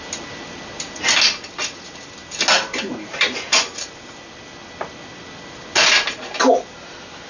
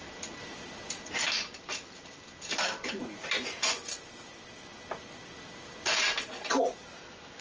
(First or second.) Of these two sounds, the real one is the first